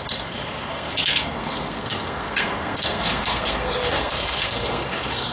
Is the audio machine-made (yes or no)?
yes